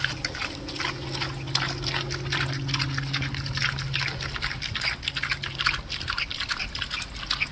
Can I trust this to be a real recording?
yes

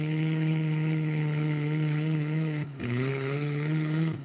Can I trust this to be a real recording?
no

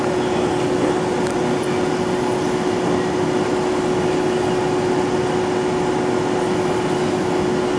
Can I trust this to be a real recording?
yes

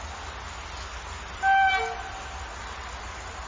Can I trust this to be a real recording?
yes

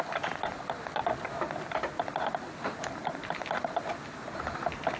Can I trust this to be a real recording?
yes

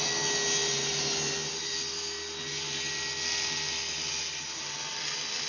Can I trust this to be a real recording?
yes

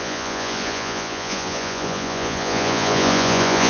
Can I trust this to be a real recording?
no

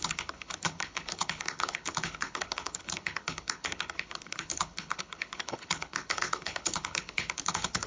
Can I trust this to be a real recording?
no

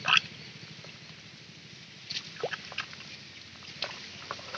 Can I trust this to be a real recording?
yes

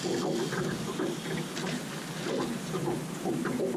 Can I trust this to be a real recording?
yes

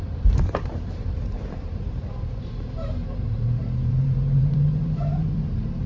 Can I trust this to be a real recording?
no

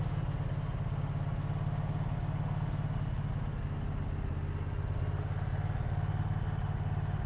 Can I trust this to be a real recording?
yes